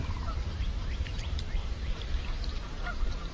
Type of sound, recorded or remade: remade